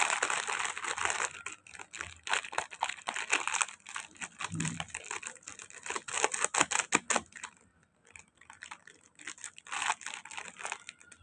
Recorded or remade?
recorded